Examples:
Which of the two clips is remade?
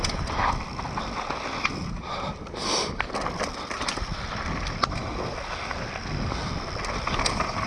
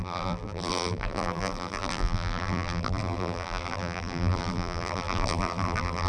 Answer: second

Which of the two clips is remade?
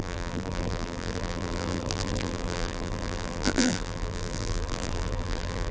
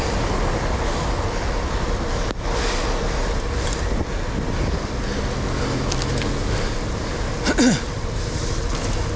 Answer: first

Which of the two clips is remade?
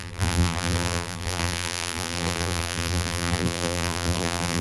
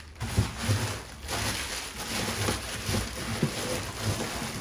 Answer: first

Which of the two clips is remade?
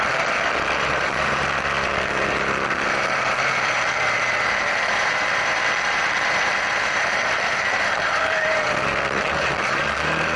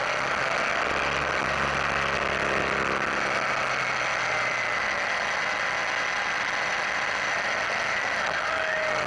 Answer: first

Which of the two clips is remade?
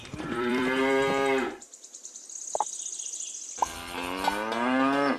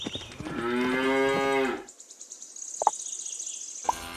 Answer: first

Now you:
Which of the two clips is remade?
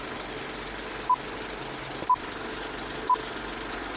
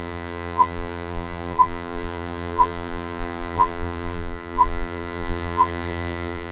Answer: second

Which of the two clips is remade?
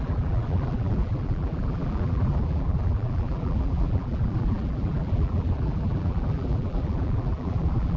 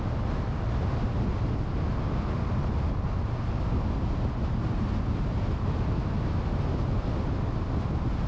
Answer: first